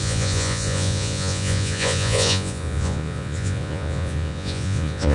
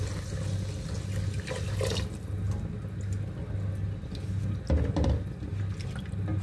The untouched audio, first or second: second